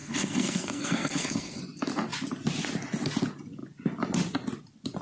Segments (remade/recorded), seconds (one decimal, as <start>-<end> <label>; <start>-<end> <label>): 0.0-1.6 remade; 1.6-5.0 recorded